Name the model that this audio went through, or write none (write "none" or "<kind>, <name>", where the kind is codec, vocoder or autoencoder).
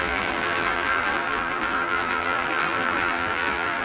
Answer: vocoder, BigVGAN v2